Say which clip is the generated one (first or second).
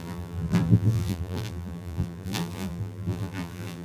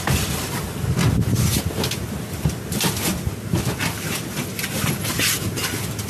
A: first